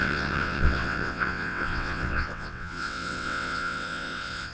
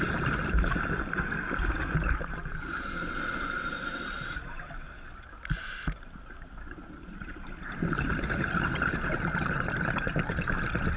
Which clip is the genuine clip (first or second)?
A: second